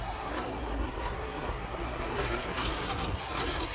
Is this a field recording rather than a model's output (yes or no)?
no